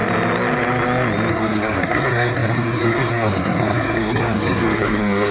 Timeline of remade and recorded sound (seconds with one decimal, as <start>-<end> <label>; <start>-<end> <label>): 0.0-1.3 recorded; 1.3-5.3 remade